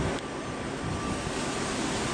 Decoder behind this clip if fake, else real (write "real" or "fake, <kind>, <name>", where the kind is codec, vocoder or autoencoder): real